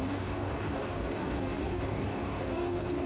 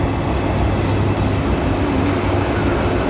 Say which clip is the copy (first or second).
first